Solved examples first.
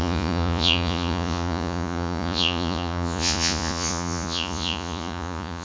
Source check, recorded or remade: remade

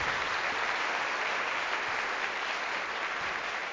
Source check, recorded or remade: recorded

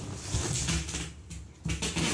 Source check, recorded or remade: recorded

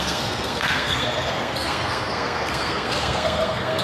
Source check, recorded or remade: remade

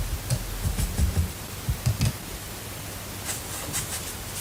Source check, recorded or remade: recorded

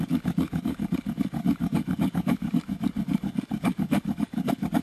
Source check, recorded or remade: remade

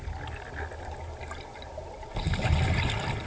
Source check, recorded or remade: recorded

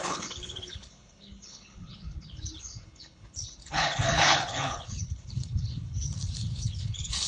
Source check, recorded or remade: remade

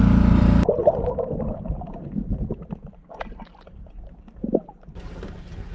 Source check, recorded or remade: remade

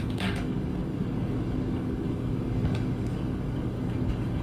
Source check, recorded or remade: remade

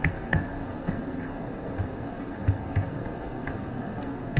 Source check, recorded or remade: remade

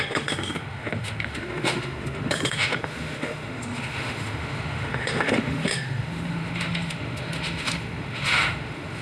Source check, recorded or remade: remade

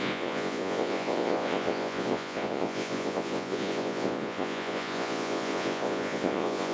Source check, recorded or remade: remade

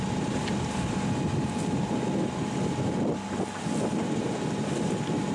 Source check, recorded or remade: recorded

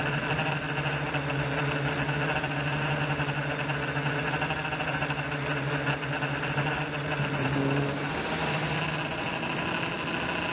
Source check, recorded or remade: recorded